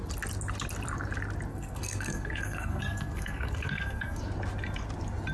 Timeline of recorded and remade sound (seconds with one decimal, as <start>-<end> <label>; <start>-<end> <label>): 0.0-1.5 recorded; 1.5-4.2 remade; 4.2-5.3 recorded